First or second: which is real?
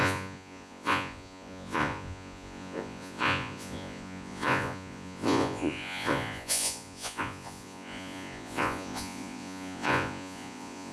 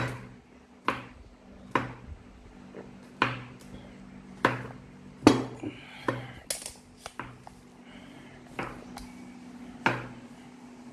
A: second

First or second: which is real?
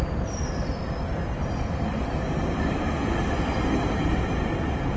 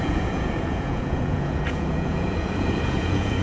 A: first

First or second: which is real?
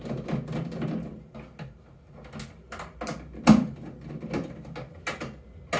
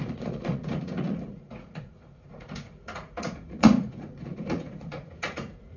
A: first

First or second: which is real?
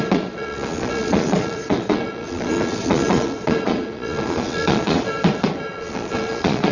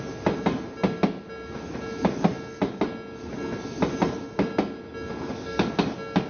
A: second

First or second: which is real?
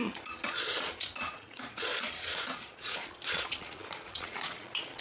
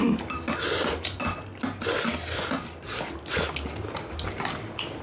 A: second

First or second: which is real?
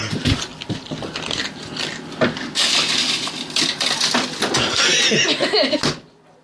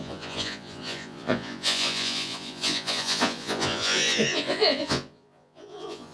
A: first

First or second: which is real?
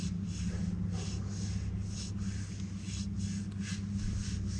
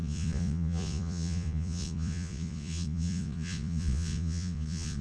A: first